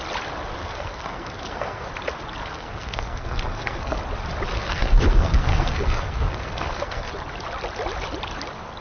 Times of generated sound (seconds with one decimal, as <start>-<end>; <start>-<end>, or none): 0.6-1.9; 2.4-4.0; 4.5-7.1